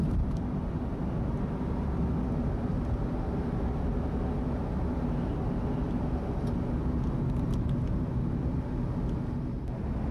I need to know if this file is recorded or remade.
recorded